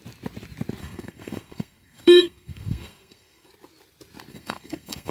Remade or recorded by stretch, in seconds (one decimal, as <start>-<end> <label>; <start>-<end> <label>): 0.0-0.8 recorded; 0.8-3.5 remade; 3.5-4.3 recorded; 4.3-5.1 remade